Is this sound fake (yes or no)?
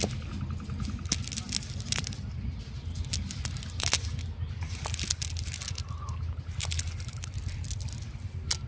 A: no